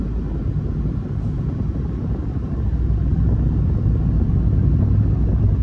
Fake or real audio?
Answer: real